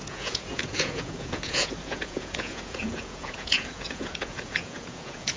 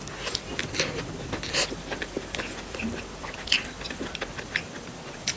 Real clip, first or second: second